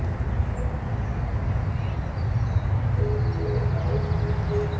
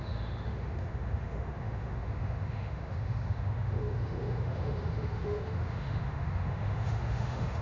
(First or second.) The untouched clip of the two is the first